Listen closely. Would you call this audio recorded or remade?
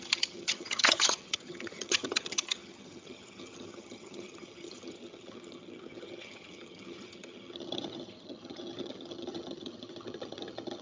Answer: remade